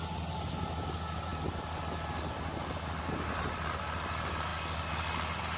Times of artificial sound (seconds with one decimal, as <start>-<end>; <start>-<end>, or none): none